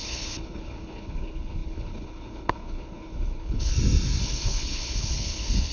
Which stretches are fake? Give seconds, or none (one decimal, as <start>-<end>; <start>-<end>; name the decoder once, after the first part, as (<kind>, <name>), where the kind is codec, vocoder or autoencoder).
0.0-3.7 (codec, HILCodec); 4.2-5.7